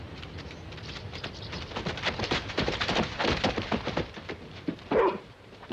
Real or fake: fake